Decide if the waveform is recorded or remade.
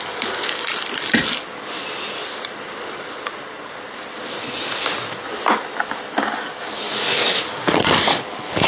recorded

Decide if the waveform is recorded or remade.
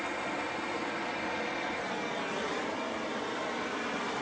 recorded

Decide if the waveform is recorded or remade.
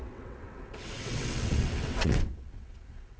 remade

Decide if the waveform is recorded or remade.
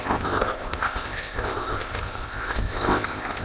remade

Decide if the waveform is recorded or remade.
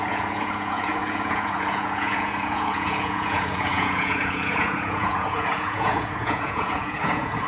remade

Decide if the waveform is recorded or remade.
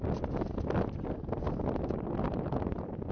recorded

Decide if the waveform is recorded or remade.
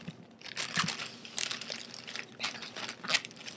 recorded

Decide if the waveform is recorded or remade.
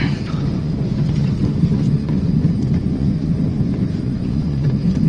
remade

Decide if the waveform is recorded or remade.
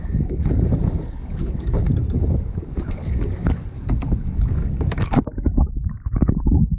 remade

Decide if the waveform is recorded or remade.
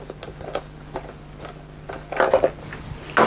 recorded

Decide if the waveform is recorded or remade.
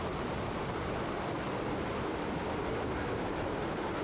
recorded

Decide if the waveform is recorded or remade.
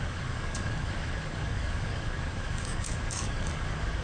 remade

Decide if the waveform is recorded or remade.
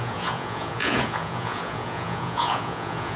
remade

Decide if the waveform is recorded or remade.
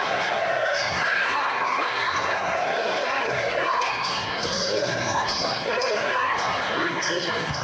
remade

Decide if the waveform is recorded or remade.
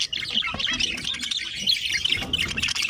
recorded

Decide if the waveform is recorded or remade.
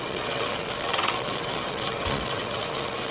remade